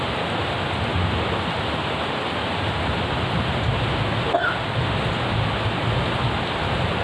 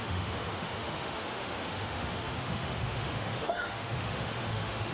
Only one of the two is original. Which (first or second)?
first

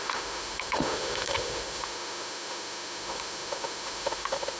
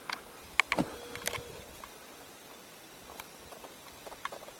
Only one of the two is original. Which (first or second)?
second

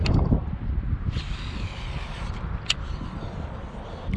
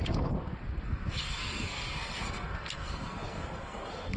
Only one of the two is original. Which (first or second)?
first